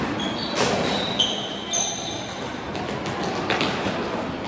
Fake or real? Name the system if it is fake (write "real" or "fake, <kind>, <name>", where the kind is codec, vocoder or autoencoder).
real